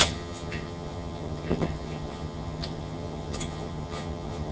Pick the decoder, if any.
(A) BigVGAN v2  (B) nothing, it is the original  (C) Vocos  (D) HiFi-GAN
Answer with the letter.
D